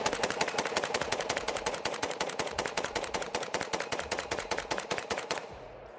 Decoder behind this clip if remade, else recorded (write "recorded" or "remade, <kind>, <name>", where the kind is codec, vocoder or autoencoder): remade, vocoder, Vocos